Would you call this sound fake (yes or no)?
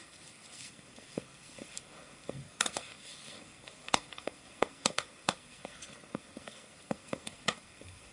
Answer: yes